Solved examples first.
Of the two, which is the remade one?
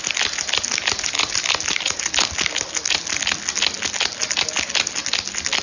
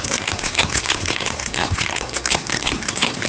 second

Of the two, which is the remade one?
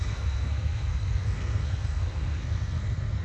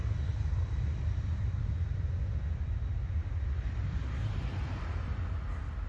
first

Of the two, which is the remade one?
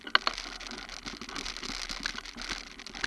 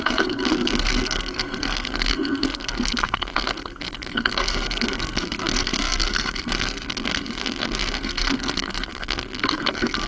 second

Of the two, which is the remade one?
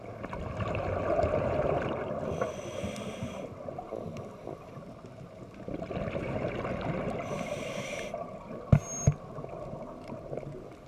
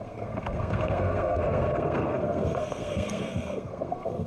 second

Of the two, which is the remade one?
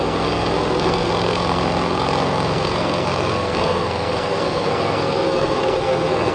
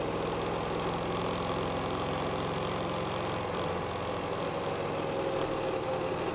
first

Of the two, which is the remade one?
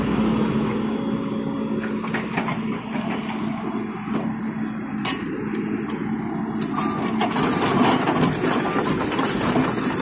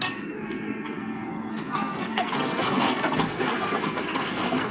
second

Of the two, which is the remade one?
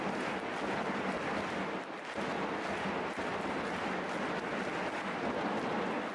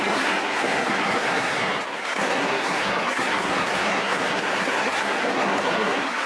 second